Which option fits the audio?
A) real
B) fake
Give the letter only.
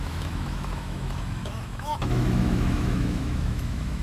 B